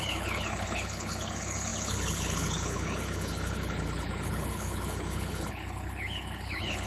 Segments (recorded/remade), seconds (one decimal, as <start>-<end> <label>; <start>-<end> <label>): 0.0-6.9 remade

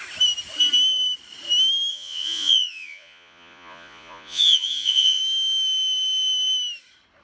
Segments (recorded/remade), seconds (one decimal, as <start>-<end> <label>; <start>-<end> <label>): 0.0-1.9 recorded; 1.9-5.2 remade; 5.2-7.2 recorded

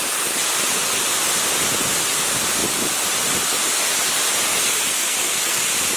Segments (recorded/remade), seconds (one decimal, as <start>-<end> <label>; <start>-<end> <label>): 0.0-4.5 recorded; 4.5-5.6 remade; 5.6-6.0 recorded

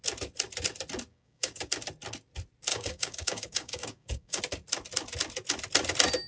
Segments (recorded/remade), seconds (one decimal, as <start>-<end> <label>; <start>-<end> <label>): 0.0-1.1 recorded; 1.1-1.7 remade; 1.7-2.7 recorded; 2.7-4.4 remade; 4.4-6.3 recorded